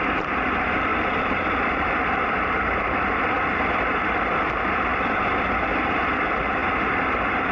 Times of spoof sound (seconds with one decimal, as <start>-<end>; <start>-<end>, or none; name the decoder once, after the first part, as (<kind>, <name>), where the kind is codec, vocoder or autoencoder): 0.9-3.2 (vocoder, BigVGAN v2)